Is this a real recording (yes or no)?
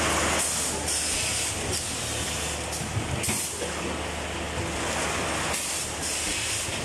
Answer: yes